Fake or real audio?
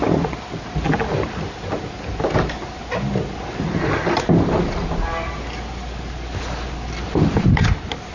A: real